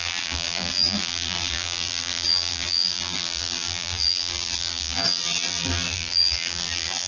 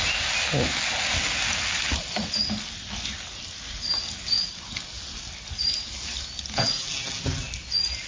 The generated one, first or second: first